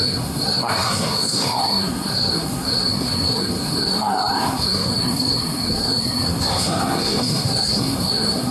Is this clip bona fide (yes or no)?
no